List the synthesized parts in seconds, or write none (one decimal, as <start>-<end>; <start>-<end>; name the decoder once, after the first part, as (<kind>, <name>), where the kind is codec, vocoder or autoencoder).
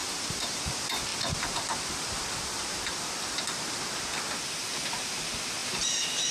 0.0-0.6 (vocoder, BigVGAN v2); 5.6-6.3